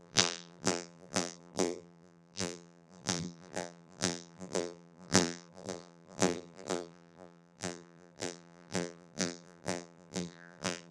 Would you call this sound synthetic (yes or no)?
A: yes